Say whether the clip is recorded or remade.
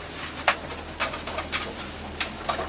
recorded